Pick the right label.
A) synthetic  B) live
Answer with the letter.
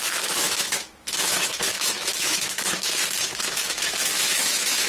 A